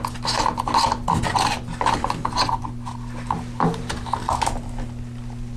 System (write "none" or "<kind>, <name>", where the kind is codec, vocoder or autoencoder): none